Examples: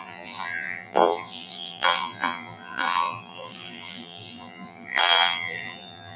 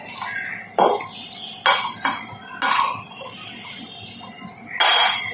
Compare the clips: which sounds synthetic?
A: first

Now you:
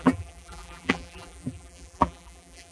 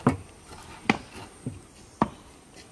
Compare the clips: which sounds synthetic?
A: first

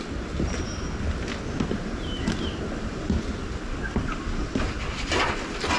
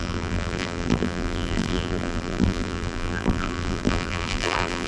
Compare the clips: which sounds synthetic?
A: second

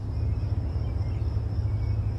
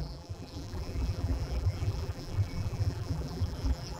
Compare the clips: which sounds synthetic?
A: second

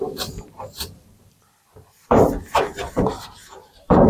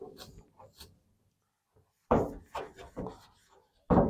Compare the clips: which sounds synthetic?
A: first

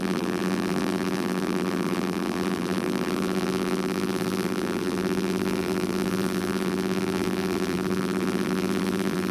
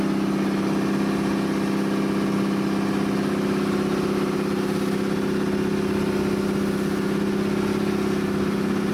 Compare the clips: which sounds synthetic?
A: first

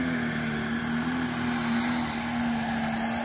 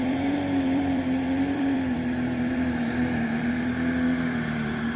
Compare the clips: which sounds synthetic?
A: second